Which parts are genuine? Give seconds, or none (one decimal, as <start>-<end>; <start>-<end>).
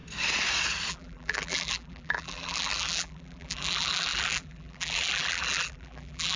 0.0-0.9